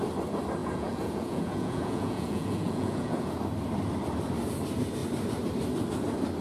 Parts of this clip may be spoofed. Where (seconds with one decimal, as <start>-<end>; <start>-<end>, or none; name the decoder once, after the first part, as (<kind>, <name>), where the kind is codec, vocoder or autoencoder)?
0.6-3.3 (vocoder, Vocos)